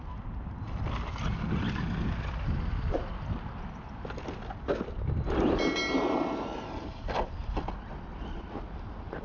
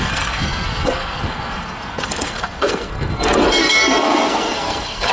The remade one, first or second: second